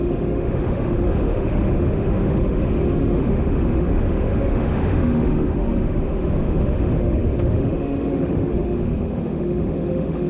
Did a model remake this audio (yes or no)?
yes